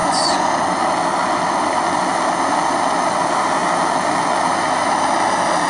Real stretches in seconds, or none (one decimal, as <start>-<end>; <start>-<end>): 0.5-5.7